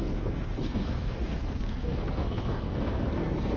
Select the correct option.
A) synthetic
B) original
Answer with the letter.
A